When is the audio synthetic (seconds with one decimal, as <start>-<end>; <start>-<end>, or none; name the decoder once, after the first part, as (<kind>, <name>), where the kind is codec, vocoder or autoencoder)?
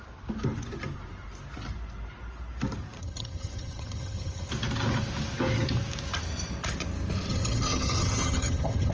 3.0-4.5 (vocoder, HiFi-GAN); 7.3-8.9